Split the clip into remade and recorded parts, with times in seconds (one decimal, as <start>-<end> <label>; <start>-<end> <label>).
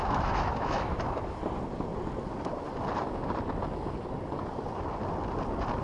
0.0-1.4 remade; 1.4-5.8 recorded